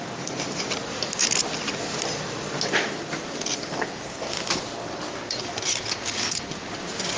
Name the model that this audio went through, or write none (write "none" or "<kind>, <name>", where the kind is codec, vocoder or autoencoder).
vocoder, BigVGAN v2